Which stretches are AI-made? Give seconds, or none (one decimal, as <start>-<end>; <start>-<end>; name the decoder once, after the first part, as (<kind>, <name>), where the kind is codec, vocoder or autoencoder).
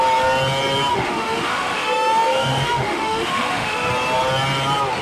0.9-3.9 (autoencoder, DAC-VAE)